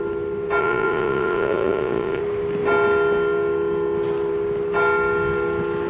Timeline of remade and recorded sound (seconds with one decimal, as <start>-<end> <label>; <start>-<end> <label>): 0.0-0.6 recorded; 0.6-2.2 remade; 2.2-5.9 recorded